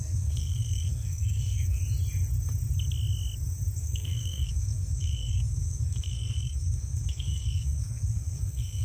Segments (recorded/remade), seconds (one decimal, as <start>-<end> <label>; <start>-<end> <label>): 0.0-1.8 remade; 1.8-3.8 recorded; 3.8-8.8 remade